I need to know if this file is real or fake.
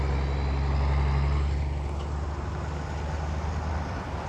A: real